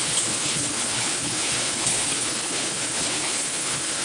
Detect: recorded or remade remade